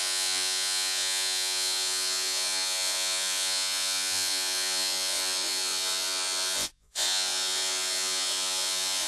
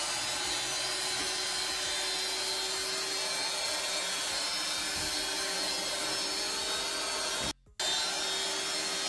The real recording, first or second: second